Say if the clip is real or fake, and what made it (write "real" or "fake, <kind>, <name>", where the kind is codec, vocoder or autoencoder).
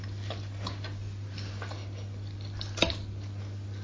real